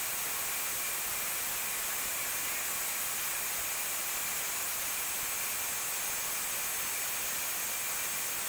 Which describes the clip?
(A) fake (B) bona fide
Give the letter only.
B